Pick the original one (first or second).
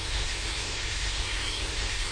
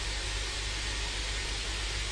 second